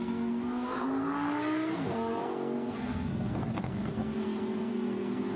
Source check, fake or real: fake